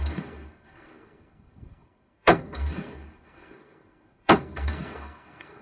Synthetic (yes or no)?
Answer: yes